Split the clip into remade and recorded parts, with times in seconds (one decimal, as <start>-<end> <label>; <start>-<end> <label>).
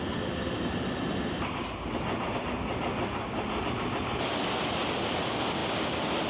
0.0-6.3 recorded